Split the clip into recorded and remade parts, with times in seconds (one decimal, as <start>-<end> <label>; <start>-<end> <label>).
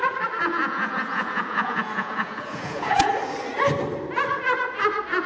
0.0-0.4 recorded; 0.4-3.1 remade; 3.1-5.3 recorded